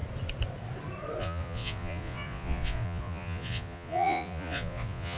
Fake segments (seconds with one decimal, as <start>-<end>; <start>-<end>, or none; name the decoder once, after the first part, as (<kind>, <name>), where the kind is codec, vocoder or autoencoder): 1.2-5.2 (vocoder, Vocos)